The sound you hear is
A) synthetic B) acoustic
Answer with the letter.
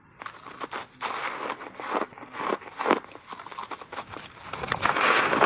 B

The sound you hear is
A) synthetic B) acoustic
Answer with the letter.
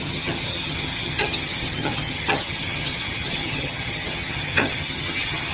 A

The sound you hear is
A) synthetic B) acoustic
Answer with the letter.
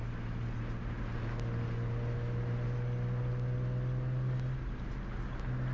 B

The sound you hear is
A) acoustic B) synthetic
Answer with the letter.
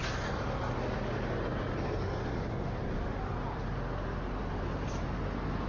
A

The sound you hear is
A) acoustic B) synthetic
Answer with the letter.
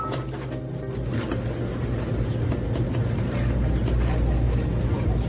A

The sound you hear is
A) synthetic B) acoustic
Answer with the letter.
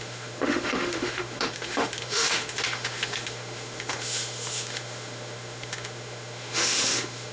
A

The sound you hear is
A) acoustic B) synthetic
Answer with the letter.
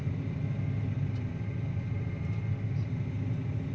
A